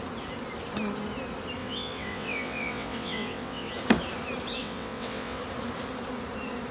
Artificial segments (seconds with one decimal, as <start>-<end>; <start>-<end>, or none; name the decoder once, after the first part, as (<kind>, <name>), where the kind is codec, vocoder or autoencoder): 1.6-3.7 (vocoder, WaveNeXt); 4.6-5.4